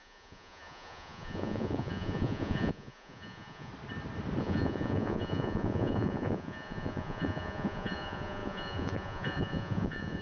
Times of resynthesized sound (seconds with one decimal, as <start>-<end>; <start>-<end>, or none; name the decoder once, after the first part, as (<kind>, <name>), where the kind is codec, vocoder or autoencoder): 0.0-3.7 (vocoder, Vocos); 4.4-10.2